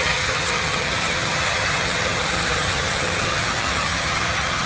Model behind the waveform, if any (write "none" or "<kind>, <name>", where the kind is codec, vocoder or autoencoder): vocoder, HiFi-GAN